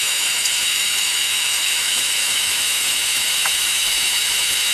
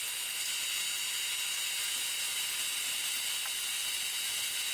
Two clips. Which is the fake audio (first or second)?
first